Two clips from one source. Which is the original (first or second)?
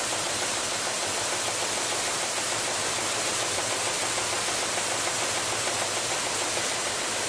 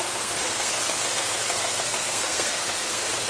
first